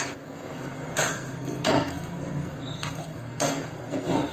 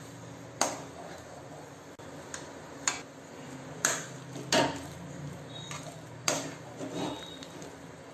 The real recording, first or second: second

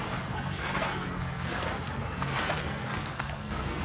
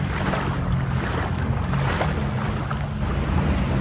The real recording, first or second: second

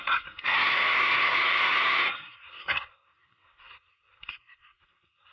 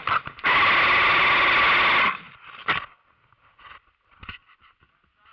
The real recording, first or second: second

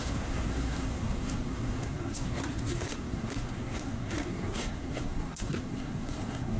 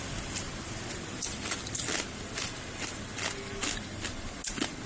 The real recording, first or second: second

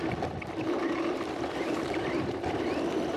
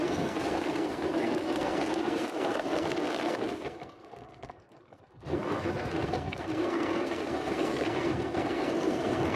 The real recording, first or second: first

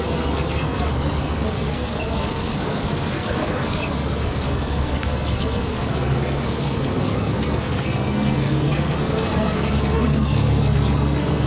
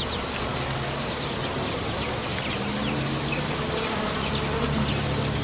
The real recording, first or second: second